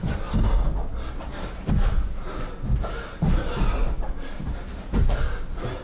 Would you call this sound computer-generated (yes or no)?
no